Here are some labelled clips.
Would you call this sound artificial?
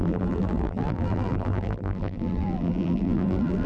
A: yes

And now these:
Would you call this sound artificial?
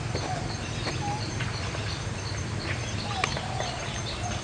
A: no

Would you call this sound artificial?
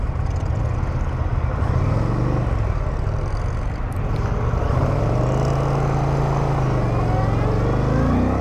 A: no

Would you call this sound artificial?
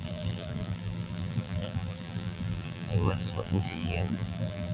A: yes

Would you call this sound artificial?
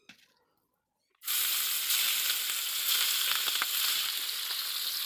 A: no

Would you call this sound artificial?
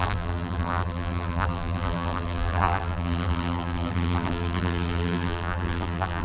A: yes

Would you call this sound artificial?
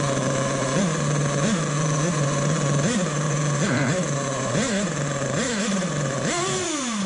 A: yes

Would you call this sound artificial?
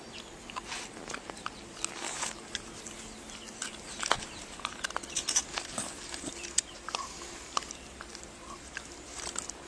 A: no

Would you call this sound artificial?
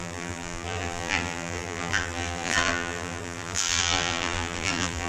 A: yes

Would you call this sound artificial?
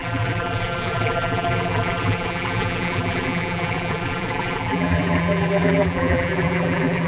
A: yes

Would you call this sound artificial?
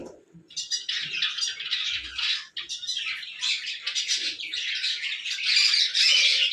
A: no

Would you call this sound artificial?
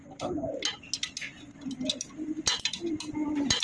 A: no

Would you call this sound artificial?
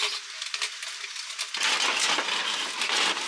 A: no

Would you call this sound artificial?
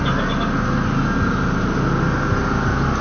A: no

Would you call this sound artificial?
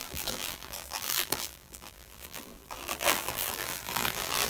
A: yes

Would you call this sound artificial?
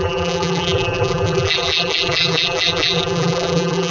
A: yes